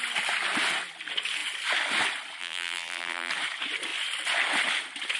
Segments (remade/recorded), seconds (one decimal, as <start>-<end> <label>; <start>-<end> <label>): 0.0-2.4 recorded; 2.4-3.3 remade; 3.3-5.2 recorded